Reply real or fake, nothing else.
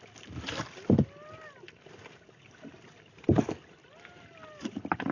fake